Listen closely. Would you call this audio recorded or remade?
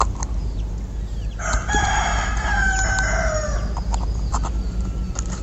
recorded